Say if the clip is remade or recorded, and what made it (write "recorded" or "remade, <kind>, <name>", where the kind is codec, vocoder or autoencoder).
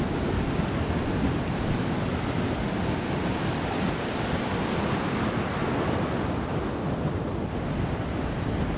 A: recorded